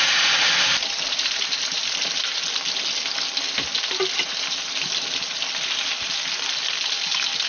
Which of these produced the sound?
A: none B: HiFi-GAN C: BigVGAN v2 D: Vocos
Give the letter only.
A